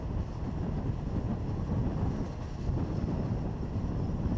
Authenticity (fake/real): real